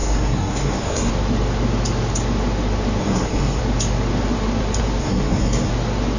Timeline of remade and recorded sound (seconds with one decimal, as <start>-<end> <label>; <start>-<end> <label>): 0.0-1.1 remade; 1.1-3.0 recorded; 3.0-3.6 remade; 3.6-5.0 recorded; 5.0-5.7 remade; 5.7-6.2 recorded